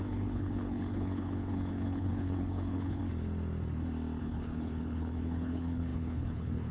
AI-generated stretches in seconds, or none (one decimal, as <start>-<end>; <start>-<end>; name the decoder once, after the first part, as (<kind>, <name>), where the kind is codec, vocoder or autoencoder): 0.0-3.0 (codec, HILCodec); 4.2-6.7